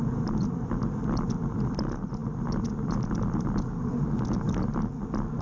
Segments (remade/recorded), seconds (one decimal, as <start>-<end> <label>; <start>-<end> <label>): 0.0-5.4 recorded